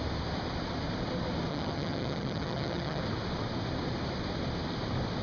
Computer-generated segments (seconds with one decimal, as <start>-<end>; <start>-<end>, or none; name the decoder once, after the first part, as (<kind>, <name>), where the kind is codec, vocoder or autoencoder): 1.5-3.0 (vocoder, HiFi-GAN)